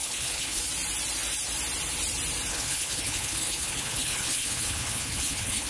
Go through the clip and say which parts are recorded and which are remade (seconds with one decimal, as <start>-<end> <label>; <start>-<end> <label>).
0.0-0.6 remade; 0.6-2.5 recorded; 2.5-5.7 remade